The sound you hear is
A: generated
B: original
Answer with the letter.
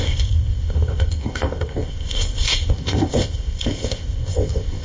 A